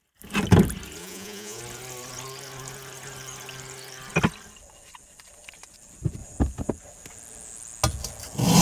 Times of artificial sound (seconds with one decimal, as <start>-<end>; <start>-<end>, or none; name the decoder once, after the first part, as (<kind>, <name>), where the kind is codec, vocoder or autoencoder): 1.0-1.6 (vocoder, Vocos)